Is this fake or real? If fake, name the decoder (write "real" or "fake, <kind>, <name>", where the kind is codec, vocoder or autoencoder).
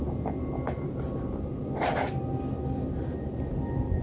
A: real